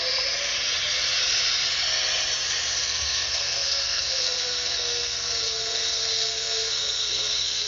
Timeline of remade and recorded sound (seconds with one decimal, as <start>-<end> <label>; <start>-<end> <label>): 0.0-2.8 recorded; 2.8-7.7 remade